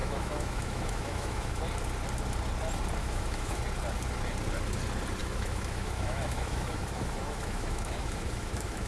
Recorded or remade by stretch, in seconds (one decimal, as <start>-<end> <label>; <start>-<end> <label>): 0.0-1.6 remade; 1.6-3.0 recorded; 3.0-3.6 remade; 3.6-5.2 recorded; 5.2-8.9 remade